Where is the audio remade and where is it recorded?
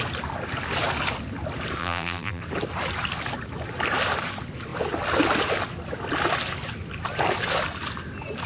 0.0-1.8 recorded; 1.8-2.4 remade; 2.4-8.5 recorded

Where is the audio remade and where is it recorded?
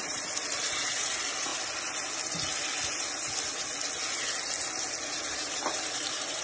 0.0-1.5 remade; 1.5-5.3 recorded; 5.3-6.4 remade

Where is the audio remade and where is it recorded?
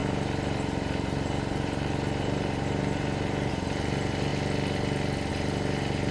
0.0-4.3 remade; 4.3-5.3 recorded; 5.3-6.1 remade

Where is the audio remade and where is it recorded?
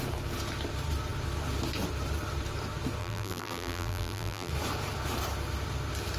0.0-3.0 recorded; 3.0-4.5 remade; 4.5-6.2 recorded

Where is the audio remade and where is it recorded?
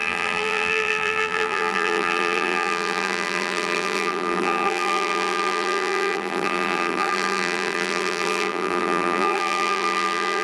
0.0-10.4 remade